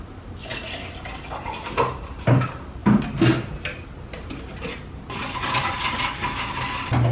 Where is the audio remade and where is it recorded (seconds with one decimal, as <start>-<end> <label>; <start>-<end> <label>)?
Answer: 0.0-7.1 recorded

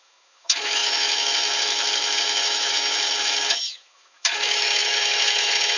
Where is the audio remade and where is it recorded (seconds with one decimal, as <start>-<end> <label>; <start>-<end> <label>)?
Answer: 0.0-5.8 remade